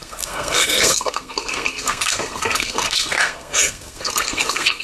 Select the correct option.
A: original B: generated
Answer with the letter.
B